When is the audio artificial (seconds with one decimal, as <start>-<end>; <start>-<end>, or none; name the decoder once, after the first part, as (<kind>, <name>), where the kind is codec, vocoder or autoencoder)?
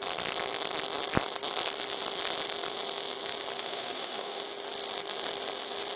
3.6-4.4 (autoencoder, DAC-VAE)